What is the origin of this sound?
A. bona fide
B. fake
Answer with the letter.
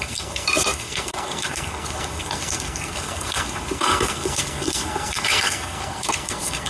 B